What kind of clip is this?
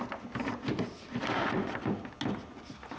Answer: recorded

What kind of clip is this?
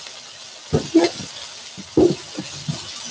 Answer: recorded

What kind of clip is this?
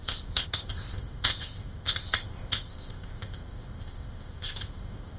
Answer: remade